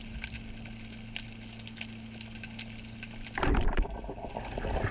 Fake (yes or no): no